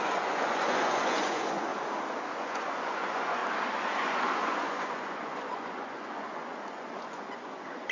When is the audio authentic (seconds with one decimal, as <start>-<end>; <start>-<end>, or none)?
1.7-2.4; 3.4-3.9